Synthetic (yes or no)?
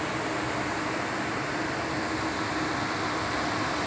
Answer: no